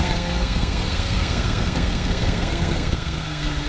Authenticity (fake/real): fake